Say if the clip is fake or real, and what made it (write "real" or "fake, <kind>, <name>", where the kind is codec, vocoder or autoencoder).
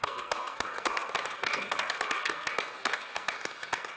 fake, codec, SNAC